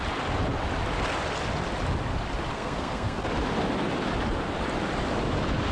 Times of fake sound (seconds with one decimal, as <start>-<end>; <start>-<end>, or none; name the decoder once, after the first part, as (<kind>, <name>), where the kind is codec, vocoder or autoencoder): 2.5-3.2 (codec, SNAC)